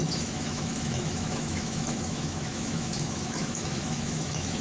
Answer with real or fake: fake